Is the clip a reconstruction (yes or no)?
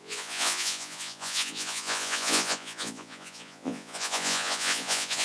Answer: yes